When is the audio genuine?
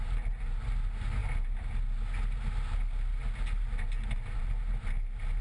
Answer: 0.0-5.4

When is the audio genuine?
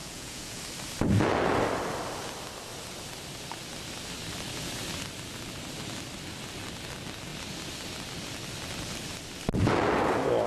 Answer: 0.6-10.5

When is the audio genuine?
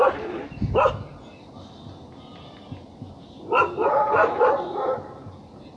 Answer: 0.0-5.8